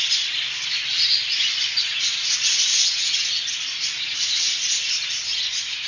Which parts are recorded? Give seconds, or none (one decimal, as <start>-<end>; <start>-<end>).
0.0-5.9